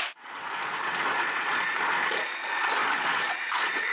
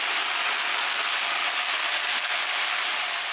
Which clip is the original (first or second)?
second